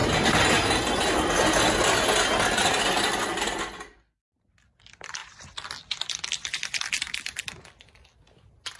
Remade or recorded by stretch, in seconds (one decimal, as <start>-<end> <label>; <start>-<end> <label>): 0.0-8.8 recorded